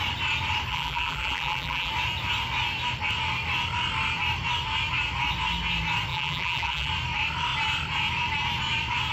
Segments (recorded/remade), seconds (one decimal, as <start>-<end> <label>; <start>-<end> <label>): 0.0-0.7 recorded; 0.7-1.9 remade; 1.9-6.1 recorded; 6.1-6.9 remade; 6.9-9.1 recorded